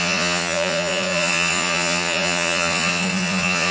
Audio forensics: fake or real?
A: fake